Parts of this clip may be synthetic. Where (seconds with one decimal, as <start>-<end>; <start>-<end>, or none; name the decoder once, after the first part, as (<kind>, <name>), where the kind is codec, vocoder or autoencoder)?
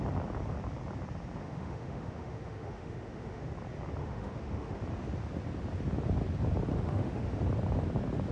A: 1.4-3.4 (autoencoder, DAC-VAE); 4.0-4.8; 6.7-7.3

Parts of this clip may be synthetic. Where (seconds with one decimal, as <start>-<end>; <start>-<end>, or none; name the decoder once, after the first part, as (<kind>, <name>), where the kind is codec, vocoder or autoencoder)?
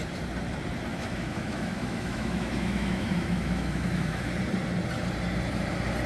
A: 0.9-4.3 (autoencoder, DAC-VAE)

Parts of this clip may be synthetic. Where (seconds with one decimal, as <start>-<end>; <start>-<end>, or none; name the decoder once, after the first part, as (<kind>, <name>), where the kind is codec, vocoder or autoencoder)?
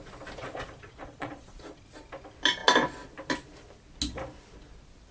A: 0.4-1.9 (vocoder, Vocos)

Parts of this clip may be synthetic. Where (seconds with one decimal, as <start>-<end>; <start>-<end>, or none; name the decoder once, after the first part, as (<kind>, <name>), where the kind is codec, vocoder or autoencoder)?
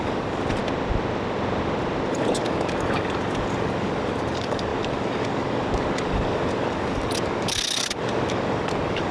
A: 0.0-0.6 (codec, DAC); 2.1-9.1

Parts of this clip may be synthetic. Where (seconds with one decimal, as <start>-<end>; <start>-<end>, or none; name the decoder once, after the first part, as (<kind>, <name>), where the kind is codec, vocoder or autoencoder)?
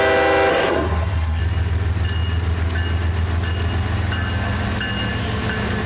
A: 0.5-1.4 (codec, SNAC)